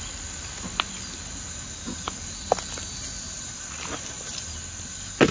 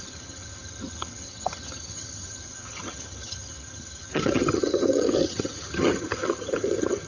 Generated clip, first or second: second